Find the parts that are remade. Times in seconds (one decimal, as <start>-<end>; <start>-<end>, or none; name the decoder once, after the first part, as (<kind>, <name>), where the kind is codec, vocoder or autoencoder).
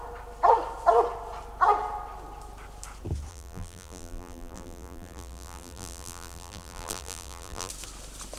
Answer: 3.3-7.7 (vocoder, BigVGAN v2)